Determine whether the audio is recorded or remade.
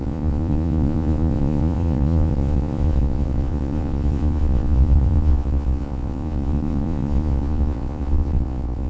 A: remade